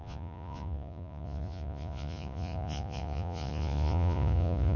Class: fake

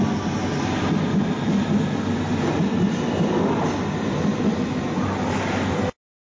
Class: real